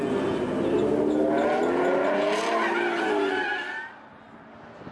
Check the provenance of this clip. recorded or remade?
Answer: recorded